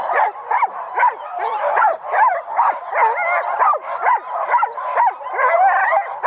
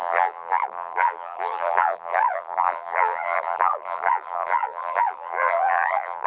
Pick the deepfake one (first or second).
second